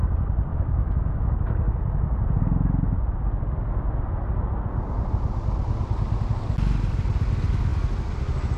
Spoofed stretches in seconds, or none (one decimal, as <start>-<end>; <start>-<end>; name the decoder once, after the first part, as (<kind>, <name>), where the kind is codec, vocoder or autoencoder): 0.5-1.3 (autoencoder, DAC-VAE)